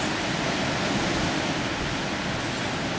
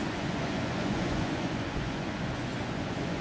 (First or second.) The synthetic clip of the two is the second